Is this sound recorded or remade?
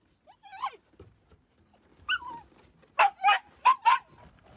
recorded